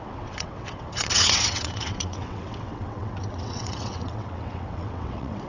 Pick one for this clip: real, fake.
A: fake